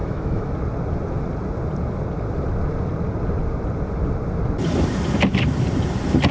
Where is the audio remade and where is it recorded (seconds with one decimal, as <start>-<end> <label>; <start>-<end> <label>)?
0.0-0.5 remade; 0.5-6.3 recorded